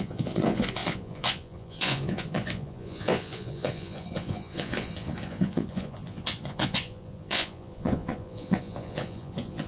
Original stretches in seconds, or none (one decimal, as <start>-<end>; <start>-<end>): none